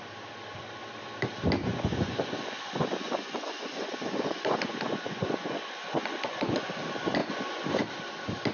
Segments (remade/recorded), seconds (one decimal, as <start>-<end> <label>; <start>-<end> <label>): 0.0-1.6 recorded; 1.6-6.7 remade; 6.7-7.2 recorded; 7.2-7.8 remade; 7.8-8.5 recorded